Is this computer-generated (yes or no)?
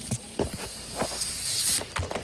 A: no